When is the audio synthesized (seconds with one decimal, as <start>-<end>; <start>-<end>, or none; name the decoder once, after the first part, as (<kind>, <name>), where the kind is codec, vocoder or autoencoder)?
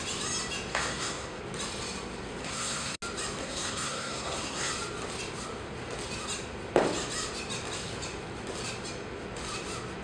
0.7-1.4 (codec, SNAC); 2.4-3.0; 3.4-4.7